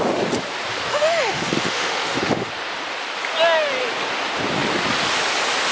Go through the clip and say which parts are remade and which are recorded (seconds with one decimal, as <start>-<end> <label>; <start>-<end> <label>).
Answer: 0.0-0.9 recorded; 0.9-2.5 remade; 2.5-5.7 recorded